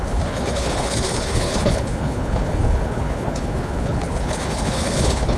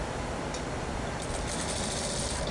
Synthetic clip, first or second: first